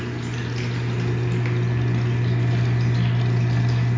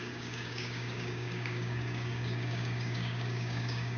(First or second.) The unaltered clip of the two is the first